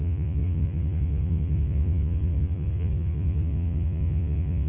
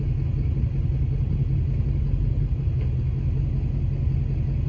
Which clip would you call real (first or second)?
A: second